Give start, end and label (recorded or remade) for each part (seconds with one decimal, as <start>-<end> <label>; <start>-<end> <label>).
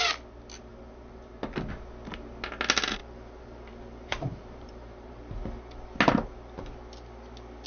0.0-0.7 recorded; 0.7-1.4 remade; 1.4-3.0 recorded; 3.0-5.2 remade; 5.2-7.7 recorded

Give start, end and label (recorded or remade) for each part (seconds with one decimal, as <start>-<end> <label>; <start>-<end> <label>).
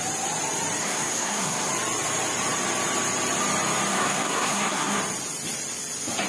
0.0-0.8 recorded; 0.8-1.7 remade; 1.7-3.9 recorded; 3.9-5.0 remade; 5.0-6.3 recorded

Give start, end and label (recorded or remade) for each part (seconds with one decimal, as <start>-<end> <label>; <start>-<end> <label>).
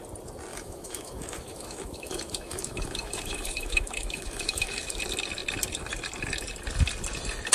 0.0-0.5 recorded; 0.5-5.0 remade; 5.0-7.5 recorded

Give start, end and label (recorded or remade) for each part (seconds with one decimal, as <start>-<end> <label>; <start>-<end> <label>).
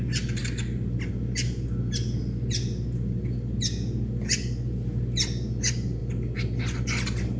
0.0-7.4 recorded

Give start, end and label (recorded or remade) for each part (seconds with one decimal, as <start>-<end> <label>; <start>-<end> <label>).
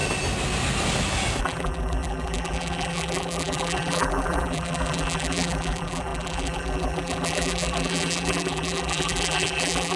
0.0-1.4 recorded; 1.4-10.0 remade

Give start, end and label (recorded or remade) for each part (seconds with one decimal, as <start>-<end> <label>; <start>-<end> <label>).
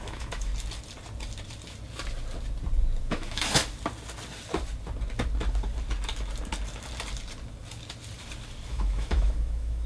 0.0-0.5 remade; 0.5-3.0 recorded; 3.0-3.6 remade; 3.6-8.7 recorded; 8.7-9.9 remade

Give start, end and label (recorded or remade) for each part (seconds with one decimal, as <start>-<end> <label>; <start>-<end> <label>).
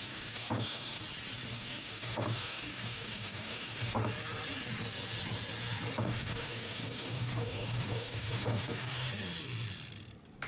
0.0-1.0 remade; 1.0-1.5 recorded; 1.5-4.0 remade; 4.0-6.0 recorded; 6.0-9.1 remade; 9.1-10.5 recorded